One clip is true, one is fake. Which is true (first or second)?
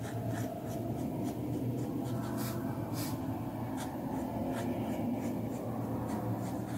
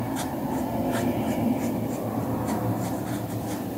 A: first